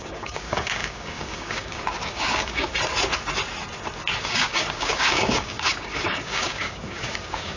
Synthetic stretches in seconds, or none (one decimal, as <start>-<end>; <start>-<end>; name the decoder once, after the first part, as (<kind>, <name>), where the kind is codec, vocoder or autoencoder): 0.0-2.7 (codec, DAC); 4.2-7.6